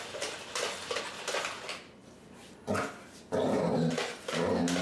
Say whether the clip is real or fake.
real